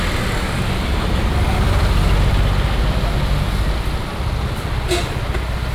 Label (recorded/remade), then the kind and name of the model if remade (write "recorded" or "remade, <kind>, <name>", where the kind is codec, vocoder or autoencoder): recorded